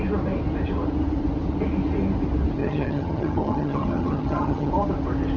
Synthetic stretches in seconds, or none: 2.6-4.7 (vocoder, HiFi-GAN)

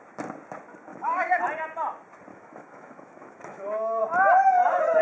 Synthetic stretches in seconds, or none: 0.9-1.4 (autoencoder, DAC-VAE); 2.3-4.0

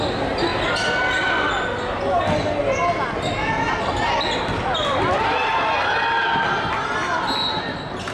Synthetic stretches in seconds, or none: none

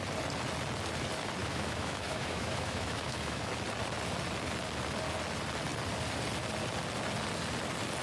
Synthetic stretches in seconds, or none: 1.4-3.5 (autoencoder, DAC-VAE)